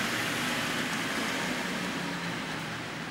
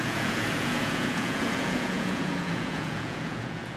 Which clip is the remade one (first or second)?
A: second